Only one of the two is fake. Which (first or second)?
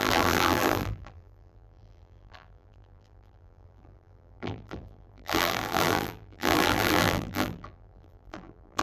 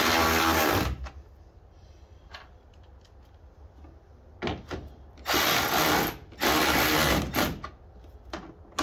first